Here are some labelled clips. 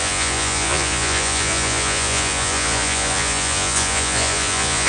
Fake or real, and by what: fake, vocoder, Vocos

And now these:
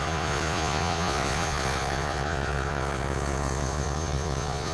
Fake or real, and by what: fake, vocoder, Vocos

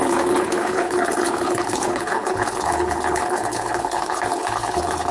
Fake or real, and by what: fake, codec, HILCodec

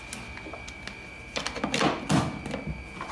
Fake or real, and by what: real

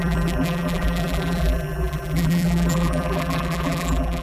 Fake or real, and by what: fake, vocoder, BigVGAN v2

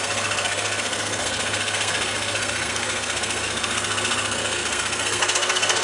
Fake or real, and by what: fake, codec, SNAC